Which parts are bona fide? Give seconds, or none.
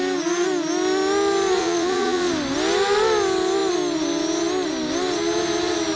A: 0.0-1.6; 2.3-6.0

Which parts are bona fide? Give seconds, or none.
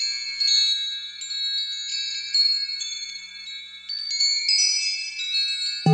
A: 0.0-1.9; 3.5-5.9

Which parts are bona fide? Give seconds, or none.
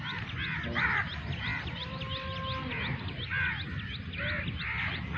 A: 0.0-5.2